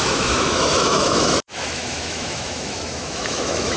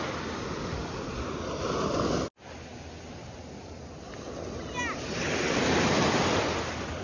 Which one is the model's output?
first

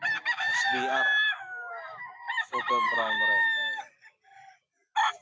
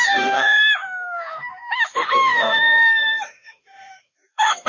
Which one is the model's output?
second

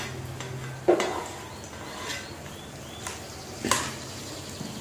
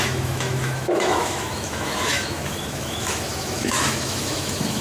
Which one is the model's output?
second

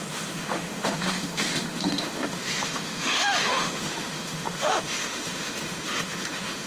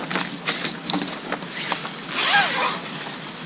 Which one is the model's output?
first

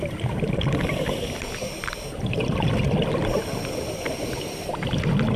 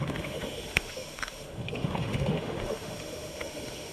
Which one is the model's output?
second